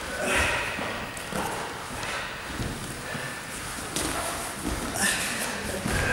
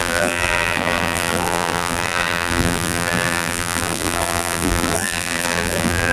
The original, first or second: first